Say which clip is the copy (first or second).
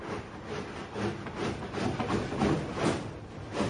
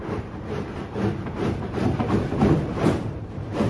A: second